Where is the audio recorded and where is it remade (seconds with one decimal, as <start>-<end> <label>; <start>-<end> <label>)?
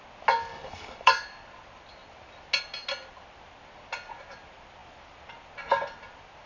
0.0-0.5 recorded; 0.5-1.1 remade; 1.1-6.5 recorded